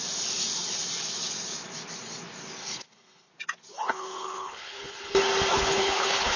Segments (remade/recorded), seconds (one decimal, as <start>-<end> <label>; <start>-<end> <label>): 0.0-2.6 recorded; 2.6-3.3 remade; 3.3-3.7 recorded; 3.7-5.1 remade; 5.1-5.5 recorded; 5.5-6.4 remade